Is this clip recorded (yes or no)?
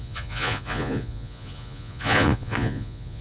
no